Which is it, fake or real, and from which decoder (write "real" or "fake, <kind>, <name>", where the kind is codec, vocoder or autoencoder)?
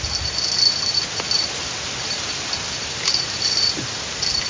real